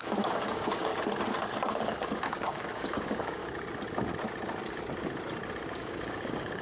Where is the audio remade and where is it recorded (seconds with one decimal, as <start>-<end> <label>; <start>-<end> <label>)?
0.0-0.9 remade; 0.9-1.7 recorded; 1.7-3.4 remade; 3.4-5.7 recorded; 5.7-6.6 remade